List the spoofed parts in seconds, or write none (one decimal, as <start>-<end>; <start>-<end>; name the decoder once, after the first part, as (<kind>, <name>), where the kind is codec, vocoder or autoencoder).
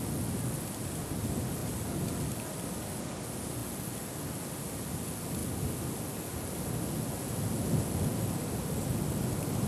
none